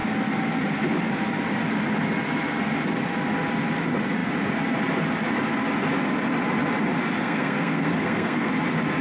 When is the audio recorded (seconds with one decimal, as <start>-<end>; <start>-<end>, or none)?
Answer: 0.0-7.2; 8.5-9.0